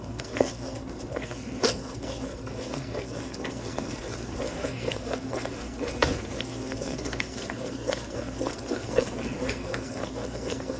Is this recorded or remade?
remade